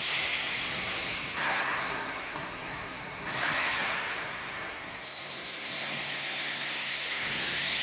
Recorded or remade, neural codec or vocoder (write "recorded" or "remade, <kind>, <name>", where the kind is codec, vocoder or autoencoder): remade, codec, SNAC